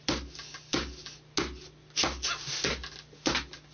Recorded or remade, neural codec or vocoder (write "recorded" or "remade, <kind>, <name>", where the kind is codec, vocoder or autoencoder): recorded